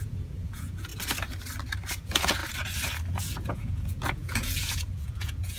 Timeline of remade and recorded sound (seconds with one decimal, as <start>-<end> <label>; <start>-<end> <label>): 0.0-0.9 remade; 0.9-1.9 recorded; 1.9-2.4 remade; 2.4-3.1 recorded; 3.1-5.6 remade